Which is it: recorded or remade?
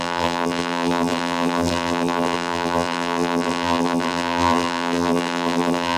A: remade